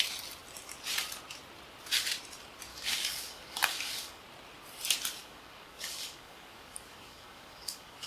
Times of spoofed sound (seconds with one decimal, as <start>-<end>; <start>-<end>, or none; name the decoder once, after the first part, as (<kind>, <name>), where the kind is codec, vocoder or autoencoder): 2.7-4.2 (codec, DAC); 5.2-8.1